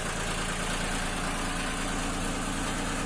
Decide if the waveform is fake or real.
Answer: real